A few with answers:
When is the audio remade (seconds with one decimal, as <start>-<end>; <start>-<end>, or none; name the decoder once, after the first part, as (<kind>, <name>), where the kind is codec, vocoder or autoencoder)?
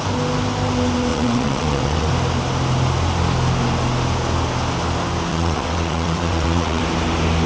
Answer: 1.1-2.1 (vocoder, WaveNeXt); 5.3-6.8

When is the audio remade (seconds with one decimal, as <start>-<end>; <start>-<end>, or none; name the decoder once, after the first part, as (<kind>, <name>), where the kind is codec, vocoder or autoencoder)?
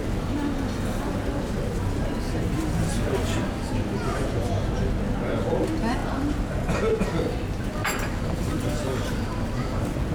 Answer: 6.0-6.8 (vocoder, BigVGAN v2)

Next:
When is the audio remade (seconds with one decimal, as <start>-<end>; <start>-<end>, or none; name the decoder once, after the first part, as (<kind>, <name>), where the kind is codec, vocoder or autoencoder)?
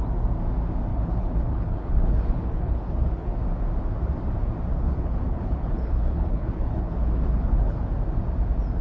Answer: 0.9-3.4 (codec, HILCodec); 4.7-7.8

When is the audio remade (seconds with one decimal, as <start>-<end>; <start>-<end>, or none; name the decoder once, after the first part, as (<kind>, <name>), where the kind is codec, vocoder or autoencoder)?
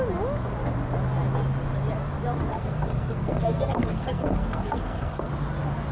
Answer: 2.5-5.3 (codec, SNAC)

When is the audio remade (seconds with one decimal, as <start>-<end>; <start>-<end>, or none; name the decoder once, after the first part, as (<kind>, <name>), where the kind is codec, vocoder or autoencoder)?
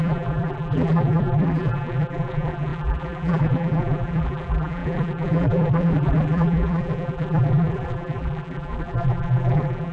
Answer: 0.0-9.9 (vocoder, BigVGAN v2)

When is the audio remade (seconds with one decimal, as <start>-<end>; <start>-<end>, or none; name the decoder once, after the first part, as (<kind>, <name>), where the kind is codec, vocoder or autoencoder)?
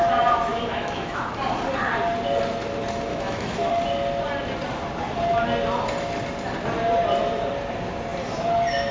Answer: 0.5-1.3 (autoencoder, DAC-VAE); 3.1-3.7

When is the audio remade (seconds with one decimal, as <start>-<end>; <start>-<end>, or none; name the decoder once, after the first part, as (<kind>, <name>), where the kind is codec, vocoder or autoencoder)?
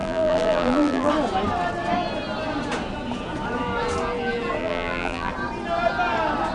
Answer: 0.0-1.1 (vocoder, BigVGAN v2); 4.6-5.3